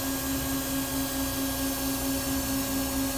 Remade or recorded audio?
recorded